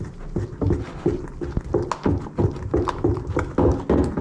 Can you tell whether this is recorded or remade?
recorded